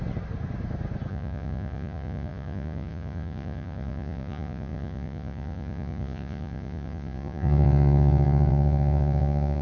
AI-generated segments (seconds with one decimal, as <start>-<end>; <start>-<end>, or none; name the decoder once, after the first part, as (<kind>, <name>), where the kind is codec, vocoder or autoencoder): 1.1-9.6 (vocoder, Vocos)